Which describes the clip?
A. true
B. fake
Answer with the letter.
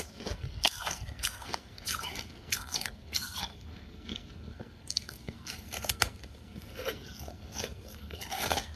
B